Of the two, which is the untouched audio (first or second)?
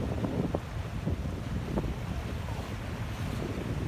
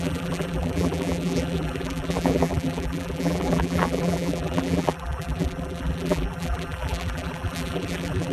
first